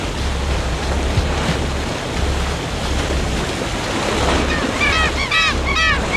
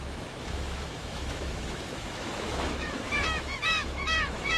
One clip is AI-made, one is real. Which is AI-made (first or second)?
second